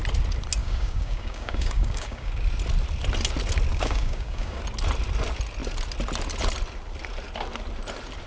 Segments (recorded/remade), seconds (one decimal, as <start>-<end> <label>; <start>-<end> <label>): 0.0-0.6 recorded; 0.6-2.3 remade; 2.3-3.7 recorded; 3.7-4.6 remade; 4.6-8.3 recorded